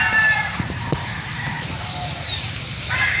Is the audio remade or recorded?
remade